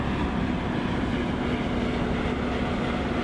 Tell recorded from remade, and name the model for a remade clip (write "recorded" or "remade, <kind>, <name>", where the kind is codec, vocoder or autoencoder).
recorded